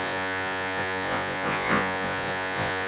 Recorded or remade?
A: remade